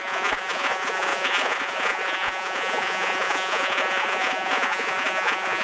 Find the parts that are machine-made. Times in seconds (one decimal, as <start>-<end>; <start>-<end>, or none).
0.0-5.6